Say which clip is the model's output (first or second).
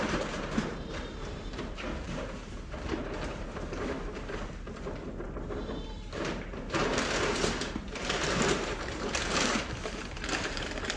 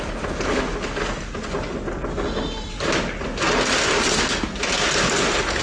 first